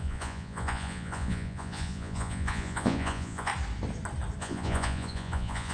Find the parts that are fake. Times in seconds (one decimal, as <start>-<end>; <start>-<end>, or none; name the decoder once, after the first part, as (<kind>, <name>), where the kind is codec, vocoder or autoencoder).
0.0-3.5 (vocoder, Vocos); 4.4-5.7